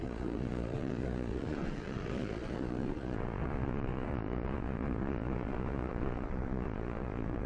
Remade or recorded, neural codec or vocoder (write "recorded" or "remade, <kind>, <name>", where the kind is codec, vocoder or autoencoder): remade, vocoder, Vocos